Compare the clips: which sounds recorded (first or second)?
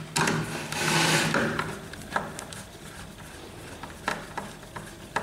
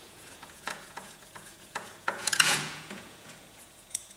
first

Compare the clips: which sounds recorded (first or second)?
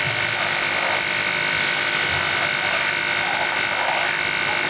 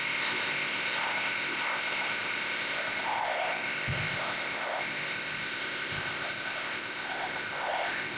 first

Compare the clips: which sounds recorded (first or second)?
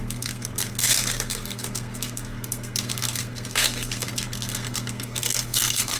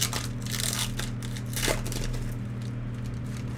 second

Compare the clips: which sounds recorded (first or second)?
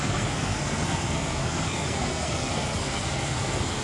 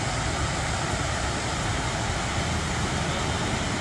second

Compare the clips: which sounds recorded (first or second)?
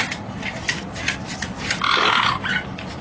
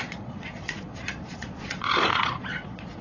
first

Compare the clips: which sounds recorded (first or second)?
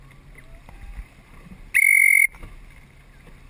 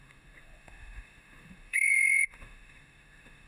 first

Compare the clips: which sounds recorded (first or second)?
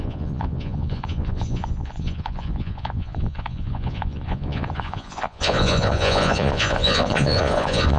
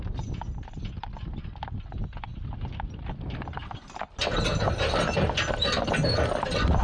second